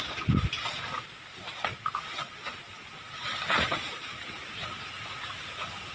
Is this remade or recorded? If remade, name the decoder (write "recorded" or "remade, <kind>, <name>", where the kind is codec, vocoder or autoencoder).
recorded